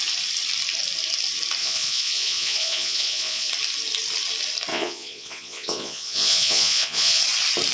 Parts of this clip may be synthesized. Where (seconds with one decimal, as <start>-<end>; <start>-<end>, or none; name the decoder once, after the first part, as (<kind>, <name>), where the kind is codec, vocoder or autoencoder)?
1.6-3.5 (vocoder, Vocos); 4.7-7.2